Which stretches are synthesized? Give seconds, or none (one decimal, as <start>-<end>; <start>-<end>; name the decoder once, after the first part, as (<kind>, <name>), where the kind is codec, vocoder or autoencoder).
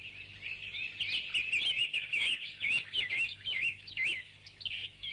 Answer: 1.8-5.1 (codec, DAC)